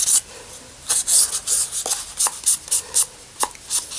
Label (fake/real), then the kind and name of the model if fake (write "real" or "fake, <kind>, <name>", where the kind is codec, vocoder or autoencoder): real